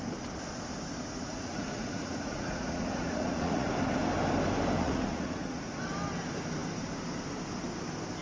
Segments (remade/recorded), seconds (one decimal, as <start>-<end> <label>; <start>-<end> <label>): 0.0-1.0 recorded; 1.0-3.7 remade; 3.7-4.8 recorded; 4.8-5.8 remade; 5.8-8.2 recorded